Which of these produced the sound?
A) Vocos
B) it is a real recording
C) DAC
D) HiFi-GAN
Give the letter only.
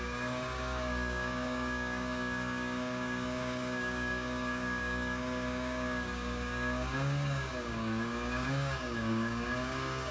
C